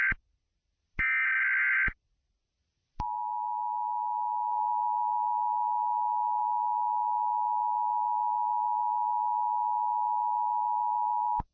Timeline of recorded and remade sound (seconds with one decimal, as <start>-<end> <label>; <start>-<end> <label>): 0.0-4.6 recorded; 4.6-6.4 remade; 6.4-11.5 recorded